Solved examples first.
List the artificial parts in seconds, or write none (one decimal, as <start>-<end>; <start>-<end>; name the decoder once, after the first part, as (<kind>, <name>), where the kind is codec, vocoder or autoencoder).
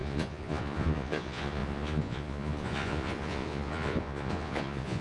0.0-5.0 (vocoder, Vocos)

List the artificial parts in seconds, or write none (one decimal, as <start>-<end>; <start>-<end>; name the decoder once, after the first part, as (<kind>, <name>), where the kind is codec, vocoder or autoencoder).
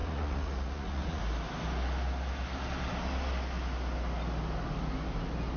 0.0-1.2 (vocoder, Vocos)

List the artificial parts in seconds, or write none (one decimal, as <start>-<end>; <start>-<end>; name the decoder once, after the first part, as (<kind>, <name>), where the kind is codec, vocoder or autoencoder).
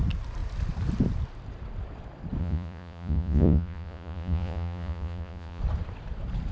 2.4-5.6 (vocoder, Vocos)